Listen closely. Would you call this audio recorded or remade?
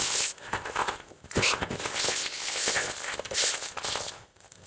remade